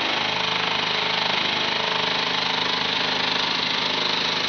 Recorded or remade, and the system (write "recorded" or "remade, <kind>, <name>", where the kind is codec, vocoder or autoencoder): recorded